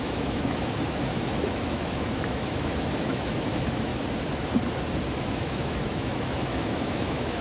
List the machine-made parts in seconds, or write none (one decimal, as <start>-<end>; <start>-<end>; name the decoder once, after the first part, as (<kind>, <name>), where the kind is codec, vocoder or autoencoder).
0.0-3.9 (autoencoder, DAC-VAE); 5.2-7.4